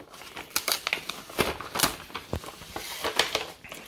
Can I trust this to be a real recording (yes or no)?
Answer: yes